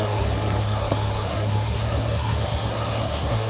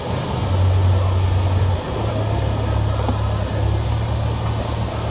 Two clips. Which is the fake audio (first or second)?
first